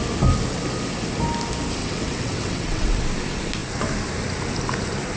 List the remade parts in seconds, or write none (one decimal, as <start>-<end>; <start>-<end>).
1.8-3.0